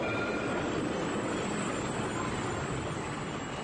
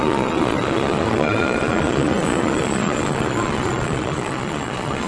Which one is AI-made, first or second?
second